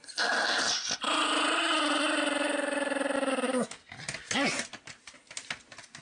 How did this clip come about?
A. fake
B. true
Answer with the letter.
B